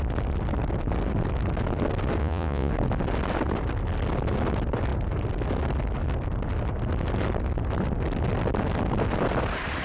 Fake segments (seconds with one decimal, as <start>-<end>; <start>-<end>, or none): 2.2-2.7